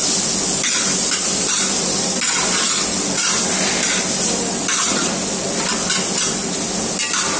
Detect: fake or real real